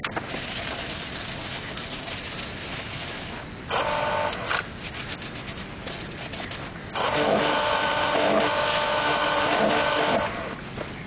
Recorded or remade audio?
recorded